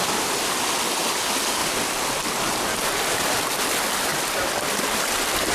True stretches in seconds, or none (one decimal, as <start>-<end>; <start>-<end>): 1.6-2.4